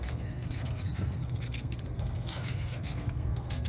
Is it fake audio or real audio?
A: fake